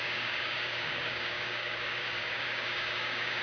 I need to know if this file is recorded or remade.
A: remade